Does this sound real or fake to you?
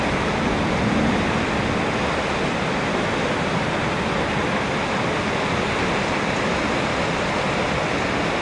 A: real